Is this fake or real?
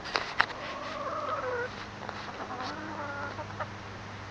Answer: real